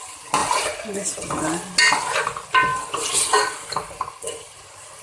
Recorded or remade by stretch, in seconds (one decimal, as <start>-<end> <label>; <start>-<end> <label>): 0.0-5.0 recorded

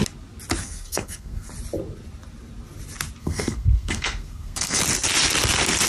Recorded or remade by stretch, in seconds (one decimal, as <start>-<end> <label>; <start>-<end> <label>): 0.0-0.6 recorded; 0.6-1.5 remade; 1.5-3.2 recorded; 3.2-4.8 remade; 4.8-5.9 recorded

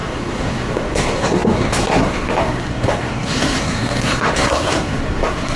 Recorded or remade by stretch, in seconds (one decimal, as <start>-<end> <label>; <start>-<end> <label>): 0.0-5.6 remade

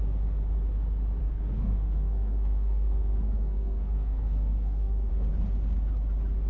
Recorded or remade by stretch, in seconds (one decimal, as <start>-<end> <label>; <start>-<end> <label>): 0.0-1.2 recorded; 1.2-5.1 remade; 5.1-6.5 recorded

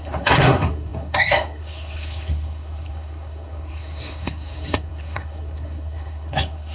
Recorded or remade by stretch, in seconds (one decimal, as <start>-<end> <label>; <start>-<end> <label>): 0.0-6.7 remade

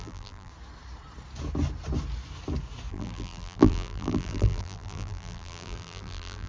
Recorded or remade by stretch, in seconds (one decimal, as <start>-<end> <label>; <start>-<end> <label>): 0.0-0.5 remade; 0.5-2.9 recorded; 2.9-6.5 remade

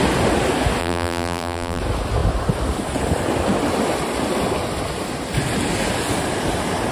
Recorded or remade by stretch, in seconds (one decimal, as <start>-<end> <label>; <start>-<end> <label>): 0.0-0.8 recorded; 0.8-1.8 remade; 1.8-6.9 recorded

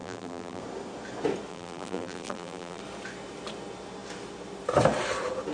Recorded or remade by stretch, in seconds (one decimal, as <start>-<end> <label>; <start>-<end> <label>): 0.0-0.6 remade; 0.6-1.5 recorded; 1.5-2.8 remade; 2.8-5.5 recorded